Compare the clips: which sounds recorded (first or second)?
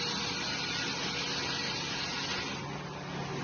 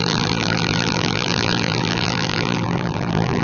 first